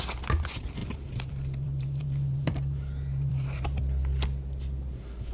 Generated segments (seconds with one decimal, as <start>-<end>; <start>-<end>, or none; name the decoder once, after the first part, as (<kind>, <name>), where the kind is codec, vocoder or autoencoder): 0.8-3.8 (vocoder, BigVGAN v2)